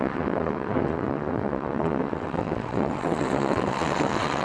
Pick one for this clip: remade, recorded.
remade